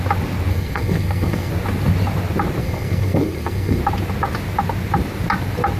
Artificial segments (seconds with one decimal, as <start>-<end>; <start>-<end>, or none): 0.5-1.5; 2.6-3.8